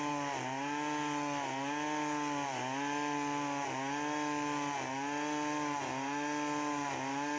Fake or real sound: real